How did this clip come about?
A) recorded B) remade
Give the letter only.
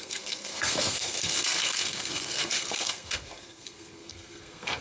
B